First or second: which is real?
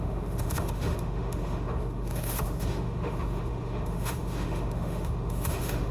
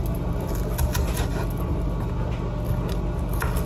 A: second